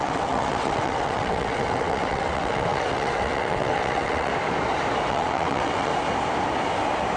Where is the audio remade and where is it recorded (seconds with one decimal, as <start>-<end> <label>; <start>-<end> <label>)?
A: 0.0-4.3 remade; 4.3-5.1 recorded; 5.1-5.9 remade; 5.9-7.2 recorded